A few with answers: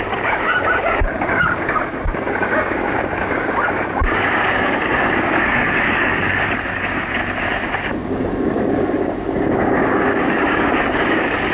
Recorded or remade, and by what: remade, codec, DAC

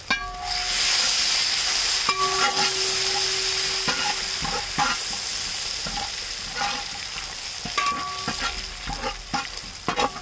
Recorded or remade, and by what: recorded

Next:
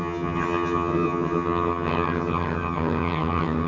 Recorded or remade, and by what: remade, vocoder, HiFi-GAN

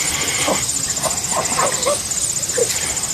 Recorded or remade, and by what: recorded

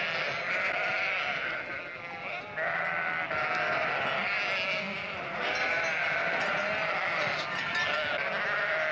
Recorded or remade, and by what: recorded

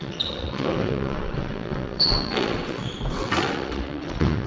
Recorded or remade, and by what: remade, vocoder, WaveNeXt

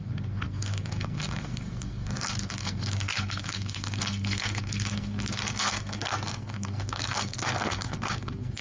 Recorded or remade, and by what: remade, codec, SNAC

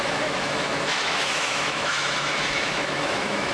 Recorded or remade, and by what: remade, autoencoder, DAC-VAE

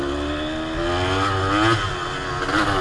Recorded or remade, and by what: recorded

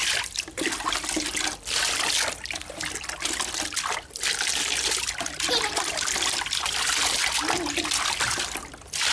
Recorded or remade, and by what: recorded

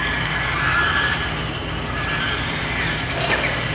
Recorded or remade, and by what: remade, vocoder, BigVGAN v2